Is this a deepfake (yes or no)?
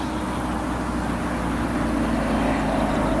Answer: no